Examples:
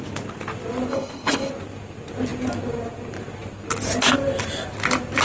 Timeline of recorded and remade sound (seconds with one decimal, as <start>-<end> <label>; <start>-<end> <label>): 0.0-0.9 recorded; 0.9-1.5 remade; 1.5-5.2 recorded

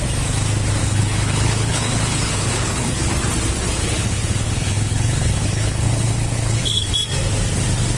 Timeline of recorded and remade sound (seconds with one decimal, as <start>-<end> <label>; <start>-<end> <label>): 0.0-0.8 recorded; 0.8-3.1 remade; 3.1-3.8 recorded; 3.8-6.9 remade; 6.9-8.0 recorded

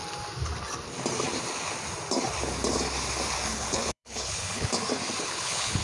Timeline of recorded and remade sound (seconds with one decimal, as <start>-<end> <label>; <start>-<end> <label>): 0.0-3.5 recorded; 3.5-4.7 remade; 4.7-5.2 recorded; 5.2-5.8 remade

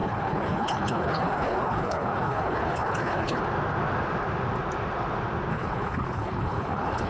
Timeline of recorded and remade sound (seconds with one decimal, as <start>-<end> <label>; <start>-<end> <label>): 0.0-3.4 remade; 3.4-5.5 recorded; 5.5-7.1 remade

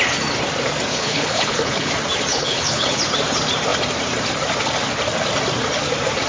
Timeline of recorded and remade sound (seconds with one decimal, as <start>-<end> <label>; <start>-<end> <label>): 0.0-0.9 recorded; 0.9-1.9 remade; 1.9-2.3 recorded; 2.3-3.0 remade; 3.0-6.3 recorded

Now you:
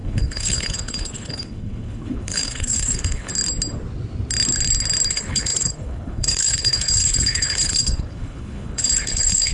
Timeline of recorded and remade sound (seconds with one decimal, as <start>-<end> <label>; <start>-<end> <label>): 0.0-3.3 remade; 3.3-5.1 recorded; 5.1-9.5 remade